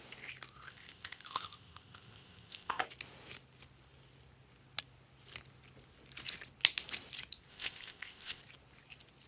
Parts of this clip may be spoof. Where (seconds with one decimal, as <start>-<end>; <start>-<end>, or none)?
0.7-2.8; 7.5-8.4